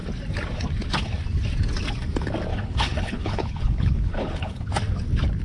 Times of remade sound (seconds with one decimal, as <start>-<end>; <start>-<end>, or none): 2.5-4.7